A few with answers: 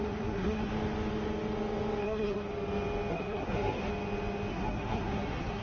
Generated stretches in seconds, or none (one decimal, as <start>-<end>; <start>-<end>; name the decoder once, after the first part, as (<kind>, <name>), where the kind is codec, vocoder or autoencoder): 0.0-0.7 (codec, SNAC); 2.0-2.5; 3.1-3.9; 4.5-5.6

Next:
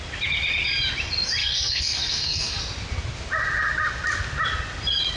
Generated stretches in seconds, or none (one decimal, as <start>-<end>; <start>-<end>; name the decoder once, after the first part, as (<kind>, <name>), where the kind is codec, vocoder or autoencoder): 1.4-2.6 (codec, SNAC)

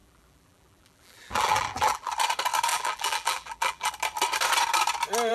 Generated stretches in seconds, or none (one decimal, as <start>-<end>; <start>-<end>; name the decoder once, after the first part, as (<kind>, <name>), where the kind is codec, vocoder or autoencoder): 0.0-2.1 (vocoder, BigVGAN v2); 2.7-3.9